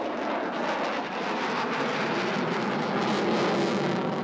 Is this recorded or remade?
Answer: recorded